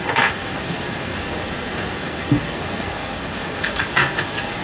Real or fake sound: fake